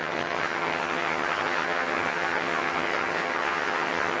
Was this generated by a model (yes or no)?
yes